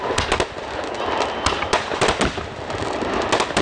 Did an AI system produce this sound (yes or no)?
no